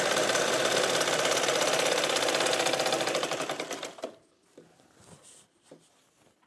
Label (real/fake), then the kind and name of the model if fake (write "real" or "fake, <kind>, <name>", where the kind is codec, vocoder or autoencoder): real